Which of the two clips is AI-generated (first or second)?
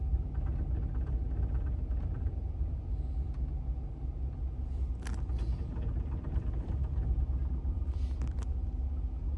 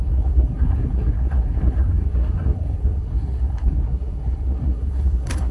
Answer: second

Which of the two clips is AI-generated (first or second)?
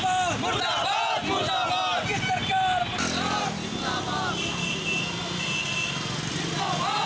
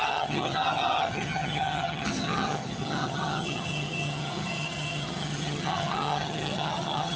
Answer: second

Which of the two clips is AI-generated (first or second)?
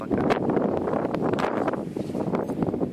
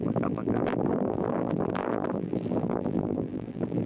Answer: second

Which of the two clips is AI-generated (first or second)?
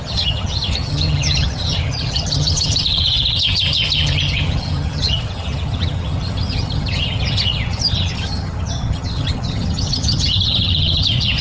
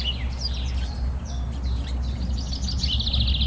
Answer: first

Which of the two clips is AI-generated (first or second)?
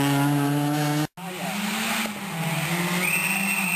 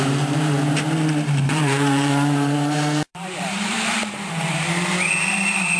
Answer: second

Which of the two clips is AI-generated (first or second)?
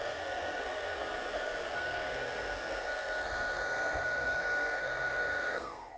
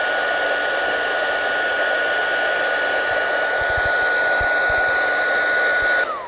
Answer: first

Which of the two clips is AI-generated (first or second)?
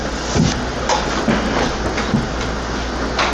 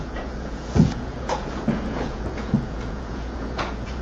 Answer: second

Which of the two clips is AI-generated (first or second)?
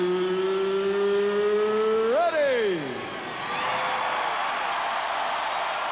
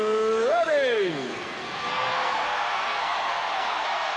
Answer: second